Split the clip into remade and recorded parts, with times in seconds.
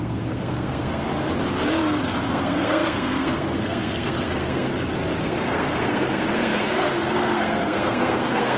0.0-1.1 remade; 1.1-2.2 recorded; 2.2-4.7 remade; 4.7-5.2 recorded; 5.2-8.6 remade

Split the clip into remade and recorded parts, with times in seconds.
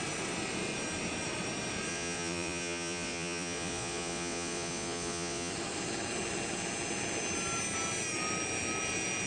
0.0-1.9 recorded; 1.9-5.5 remade; 5.5-9.3 recorded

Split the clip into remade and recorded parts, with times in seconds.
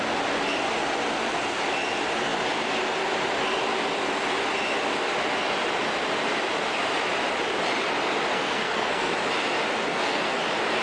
0.0-8.3 recorded; 8.3-9.1 remade; 9.1-9.9 recorded; 9.9-10.4 remade; 10.4-10.8 recorded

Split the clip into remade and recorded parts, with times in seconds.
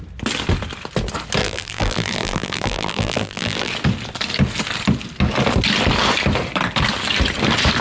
0.0-1.4 recorded; 1.4-3.7 remade; 3.7-7.8 recorded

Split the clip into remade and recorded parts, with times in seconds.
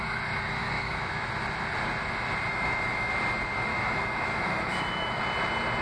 0.0-0.6 recorded; 0.6-1.3 remade; 1.3-2.5 recorded; 2.5-3.1 remade; 3.1-3.7 recorded; 3.7-5.2 remade; 5.2-5.8 recorded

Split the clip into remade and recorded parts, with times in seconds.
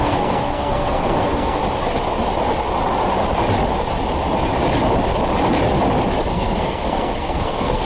0.0-1.6 remade; 1.6-6.3 recorded; 6.3-7.9 remade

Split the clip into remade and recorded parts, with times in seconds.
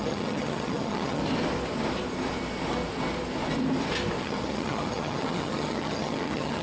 0.0-1.2 remade; 1.2-4.2 recorded; 4.2-6.6 remade